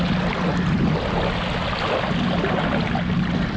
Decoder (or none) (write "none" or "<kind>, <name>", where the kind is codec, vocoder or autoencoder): none